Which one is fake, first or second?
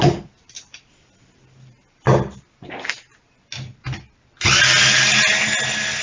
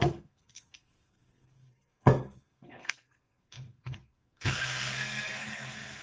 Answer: second